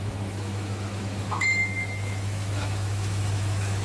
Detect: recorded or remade remade